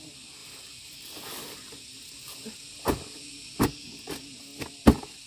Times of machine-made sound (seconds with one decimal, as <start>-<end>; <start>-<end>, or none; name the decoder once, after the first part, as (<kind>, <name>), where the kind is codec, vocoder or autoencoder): 0.0-5.3 (vocoder, BigVGAN v2)